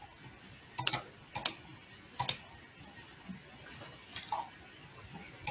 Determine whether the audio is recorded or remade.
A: recorded